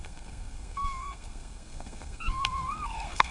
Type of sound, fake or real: fake